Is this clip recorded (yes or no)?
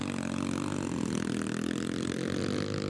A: yes